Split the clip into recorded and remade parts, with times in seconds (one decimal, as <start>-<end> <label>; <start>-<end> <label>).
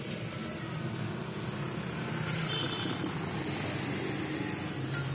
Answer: 0.0-5.1 recorded